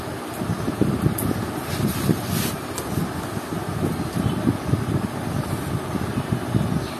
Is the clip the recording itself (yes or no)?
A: yes